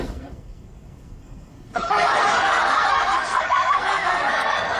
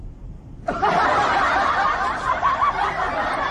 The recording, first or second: second